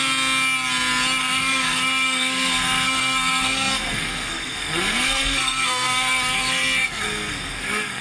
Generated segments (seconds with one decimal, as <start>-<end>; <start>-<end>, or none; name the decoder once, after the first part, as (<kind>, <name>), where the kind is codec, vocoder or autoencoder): 1.2-8.0 (codec, SNAC)